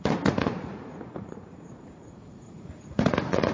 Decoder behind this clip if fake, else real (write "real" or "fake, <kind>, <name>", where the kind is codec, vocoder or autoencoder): fake, vocoder, Vocos